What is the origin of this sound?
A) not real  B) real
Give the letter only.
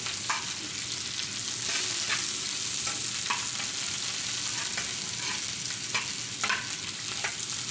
B